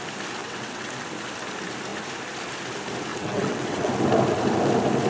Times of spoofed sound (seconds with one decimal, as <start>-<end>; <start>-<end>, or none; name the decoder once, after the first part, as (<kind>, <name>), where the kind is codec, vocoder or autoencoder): 0.4-0.9 (vocoder, WaveNeXt); 3.1-3.9